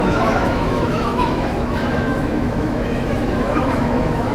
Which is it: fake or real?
fake